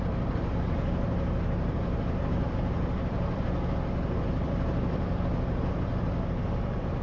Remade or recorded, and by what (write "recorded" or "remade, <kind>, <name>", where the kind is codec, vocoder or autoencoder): remade, vocoder, BigVGAN v2